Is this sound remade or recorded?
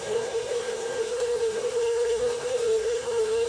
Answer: remade